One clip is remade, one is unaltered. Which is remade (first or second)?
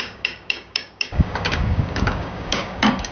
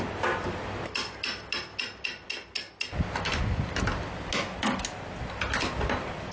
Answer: first